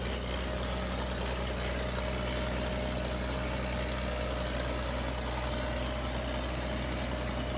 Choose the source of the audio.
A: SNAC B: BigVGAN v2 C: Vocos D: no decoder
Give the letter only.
D